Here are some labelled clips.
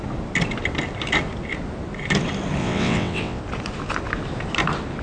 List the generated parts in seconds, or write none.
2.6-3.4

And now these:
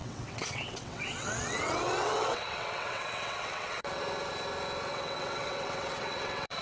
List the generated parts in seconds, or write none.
0.0-4.0; 4.9-6.6

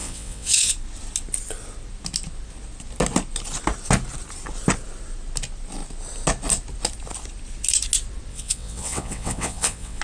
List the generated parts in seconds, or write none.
0.0-0.7; 8.3-10.0